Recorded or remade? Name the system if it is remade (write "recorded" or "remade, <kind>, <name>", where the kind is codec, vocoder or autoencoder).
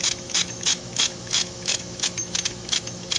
remade, autoencoder, DAC-VAE